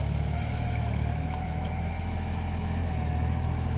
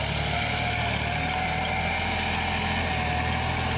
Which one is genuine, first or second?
second